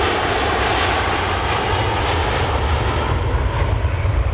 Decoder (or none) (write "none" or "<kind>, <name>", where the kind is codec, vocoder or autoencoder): none